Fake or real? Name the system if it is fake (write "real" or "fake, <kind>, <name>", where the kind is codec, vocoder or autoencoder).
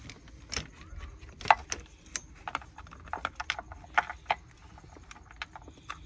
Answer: real